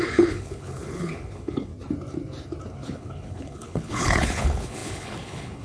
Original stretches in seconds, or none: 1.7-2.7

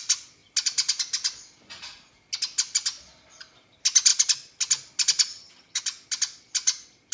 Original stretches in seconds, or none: 0.0-5.3; 5.8-7.1

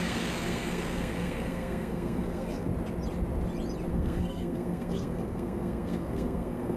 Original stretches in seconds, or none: 2.7-3.9

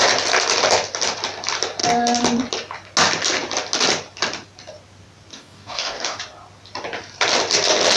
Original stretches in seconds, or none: 0.0-5.3; 6.2-8.0